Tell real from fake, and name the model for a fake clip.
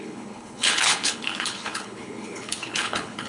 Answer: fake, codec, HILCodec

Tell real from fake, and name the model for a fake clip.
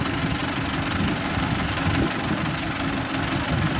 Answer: real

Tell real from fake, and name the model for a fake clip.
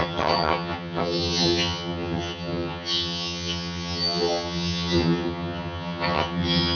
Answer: fake, vocoder, HiFi-GAN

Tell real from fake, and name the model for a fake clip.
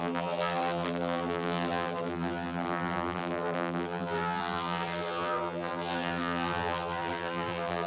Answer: fake, vocoder, BigVGAN v2